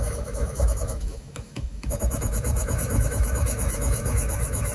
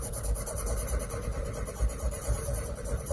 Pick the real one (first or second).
second